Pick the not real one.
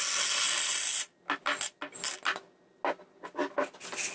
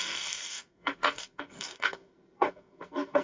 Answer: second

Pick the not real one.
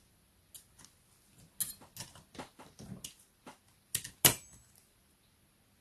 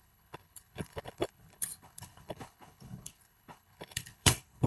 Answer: second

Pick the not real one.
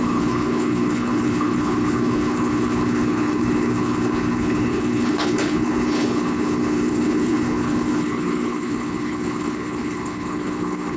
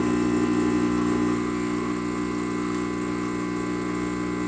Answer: first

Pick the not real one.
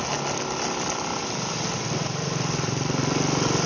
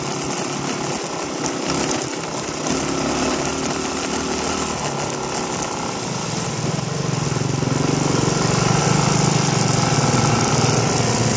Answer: first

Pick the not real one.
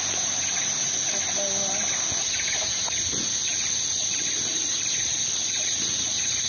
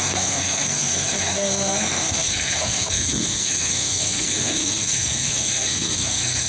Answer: second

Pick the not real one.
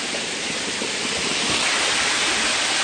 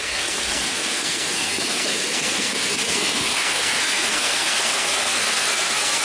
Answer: second